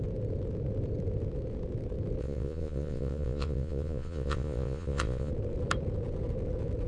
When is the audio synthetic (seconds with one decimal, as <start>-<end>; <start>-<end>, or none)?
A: 2.2-5.3